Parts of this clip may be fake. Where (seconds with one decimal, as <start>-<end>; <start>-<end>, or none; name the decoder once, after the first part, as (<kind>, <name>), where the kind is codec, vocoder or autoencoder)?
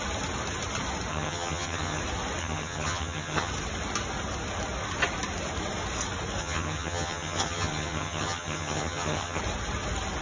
1.1-2.0 (vocoder, HiFi-GAN); 2.4-3.5; 6.4-9.4